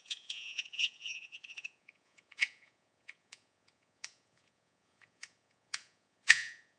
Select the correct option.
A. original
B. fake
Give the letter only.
B